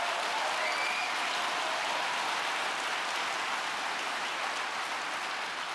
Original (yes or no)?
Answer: yes